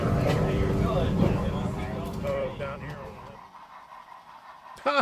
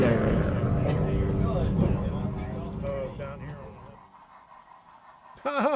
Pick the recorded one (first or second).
second